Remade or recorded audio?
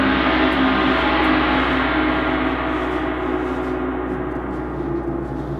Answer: recorded